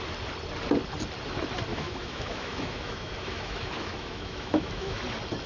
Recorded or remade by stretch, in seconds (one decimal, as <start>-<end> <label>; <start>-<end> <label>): 0.0-1.7 recorded; 1.7-5.0 remade; 5.0-5.5 recorded